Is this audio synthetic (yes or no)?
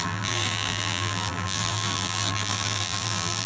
yes